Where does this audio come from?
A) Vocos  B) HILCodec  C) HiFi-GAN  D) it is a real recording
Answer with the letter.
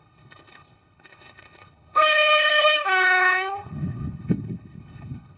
B